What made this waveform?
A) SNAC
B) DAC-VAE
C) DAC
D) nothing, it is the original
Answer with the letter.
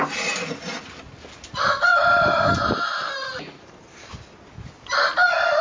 D